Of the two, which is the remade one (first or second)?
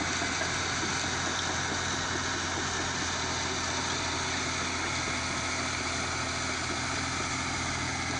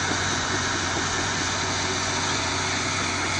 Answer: second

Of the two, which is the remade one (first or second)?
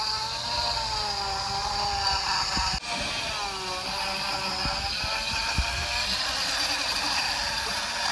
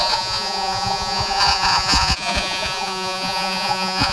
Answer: second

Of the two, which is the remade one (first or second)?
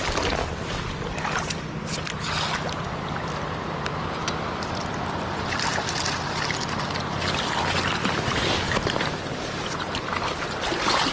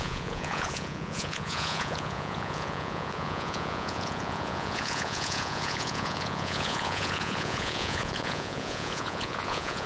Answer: second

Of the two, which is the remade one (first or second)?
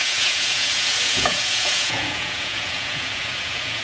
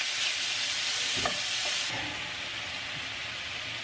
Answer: first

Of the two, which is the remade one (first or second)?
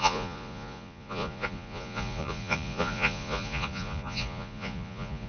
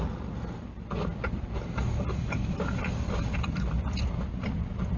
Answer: first